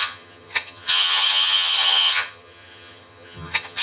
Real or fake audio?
fake